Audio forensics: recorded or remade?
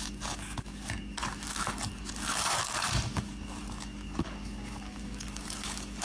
remade